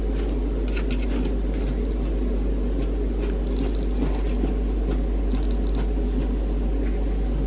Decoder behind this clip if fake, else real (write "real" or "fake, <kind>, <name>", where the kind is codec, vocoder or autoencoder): real